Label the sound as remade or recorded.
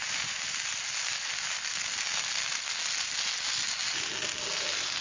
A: recorded